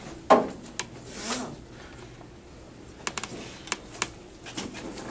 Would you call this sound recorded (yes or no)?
yes